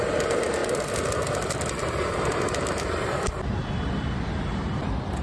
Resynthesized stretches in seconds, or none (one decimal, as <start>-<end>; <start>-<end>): none